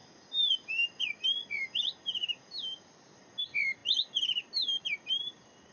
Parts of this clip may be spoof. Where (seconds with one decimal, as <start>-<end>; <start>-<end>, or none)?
none